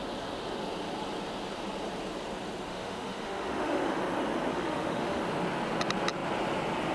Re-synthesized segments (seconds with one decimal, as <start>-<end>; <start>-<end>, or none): 2.7-4.0; 4.5-5.2